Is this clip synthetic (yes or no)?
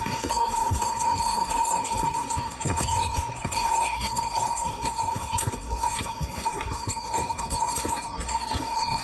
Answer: yes